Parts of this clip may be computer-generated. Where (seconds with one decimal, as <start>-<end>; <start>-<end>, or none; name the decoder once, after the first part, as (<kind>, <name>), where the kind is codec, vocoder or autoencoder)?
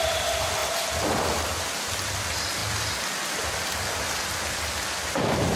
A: 0.0-0.6 (vocoder, BigVGAN v2); 2.2-2.6; 4.5-5.6